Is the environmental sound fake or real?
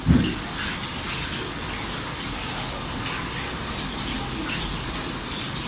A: real